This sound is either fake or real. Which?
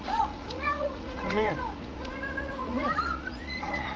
fake